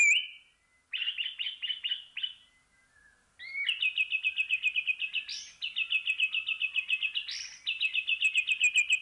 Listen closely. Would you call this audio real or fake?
real